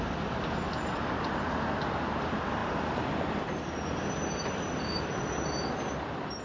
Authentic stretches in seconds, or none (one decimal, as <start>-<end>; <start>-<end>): 0.0-6.4